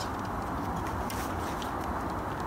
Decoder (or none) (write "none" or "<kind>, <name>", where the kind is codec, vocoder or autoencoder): none